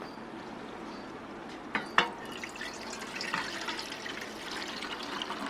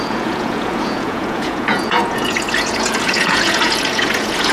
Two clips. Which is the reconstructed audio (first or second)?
second